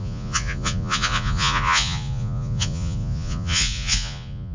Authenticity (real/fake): fake